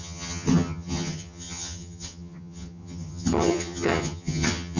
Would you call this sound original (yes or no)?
no